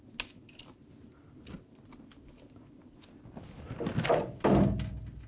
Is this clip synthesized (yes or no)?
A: no